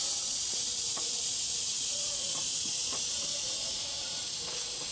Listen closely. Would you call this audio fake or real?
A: fake